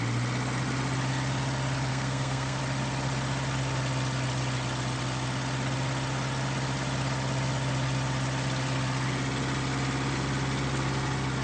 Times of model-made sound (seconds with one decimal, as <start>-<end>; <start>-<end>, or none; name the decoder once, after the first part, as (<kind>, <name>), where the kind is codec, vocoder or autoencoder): 1.9-2.6 (codec, SNAC)